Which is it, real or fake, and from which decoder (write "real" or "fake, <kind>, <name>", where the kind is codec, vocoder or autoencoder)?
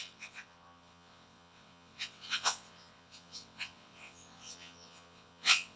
fake, vocoder, WaveNeXt